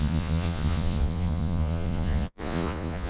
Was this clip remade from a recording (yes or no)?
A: yes